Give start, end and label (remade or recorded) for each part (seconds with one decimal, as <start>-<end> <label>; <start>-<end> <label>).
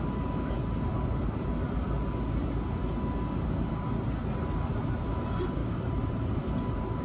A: 0.0-5.6 recorded; 5.6-6.3 remade; 6.3-7.0 recorded